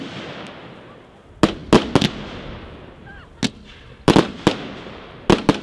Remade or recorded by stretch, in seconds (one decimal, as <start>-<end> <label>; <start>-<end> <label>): 0.0-5.6 recorded